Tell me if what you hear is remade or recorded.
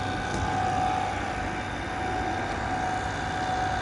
recorded